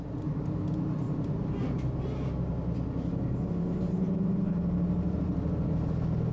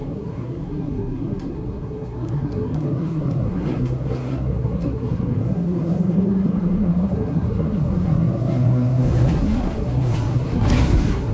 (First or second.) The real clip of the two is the first